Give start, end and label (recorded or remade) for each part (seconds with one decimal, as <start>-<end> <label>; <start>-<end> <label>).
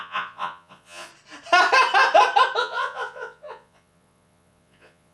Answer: 0.0-1.1 remade; 1.1-2.6 recorded; 2.6-5.1 remade